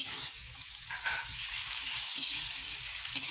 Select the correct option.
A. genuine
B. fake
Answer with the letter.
B